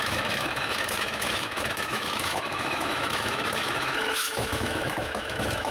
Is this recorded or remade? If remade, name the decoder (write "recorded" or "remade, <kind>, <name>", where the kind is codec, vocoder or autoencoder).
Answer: remade, autoencoder, DAC-VAE